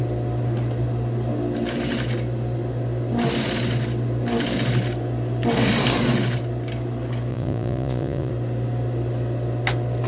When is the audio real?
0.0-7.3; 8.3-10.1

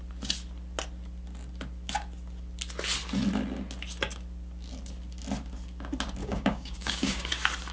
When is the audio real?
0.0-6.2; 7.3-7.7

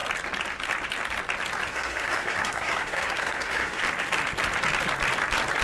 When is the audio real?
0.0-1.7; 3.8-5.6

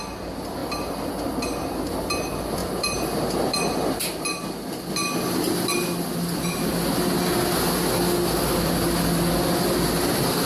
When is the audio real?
0.0-10.5

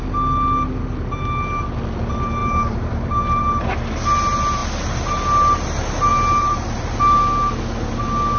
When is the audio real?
0.0-2.4; 3.4-6.1; 6.9-8.4

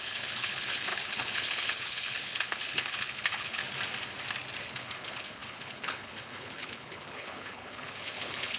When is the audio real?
3.6-4.6

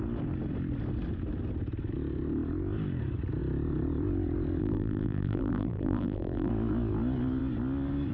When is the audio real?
0.0-4.6; 6.5-8.1